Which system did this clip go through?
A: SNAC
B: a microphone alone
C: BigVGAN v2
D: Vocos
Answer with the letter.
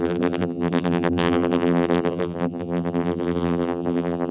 C